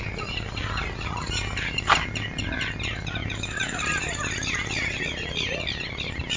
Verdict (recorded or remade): recorded